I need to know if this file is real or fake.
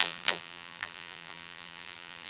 fake